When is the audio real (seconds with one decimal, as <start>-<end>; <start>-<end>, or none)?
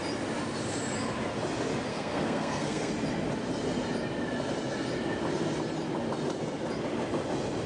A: 0.0-1.9; 2.9-7.7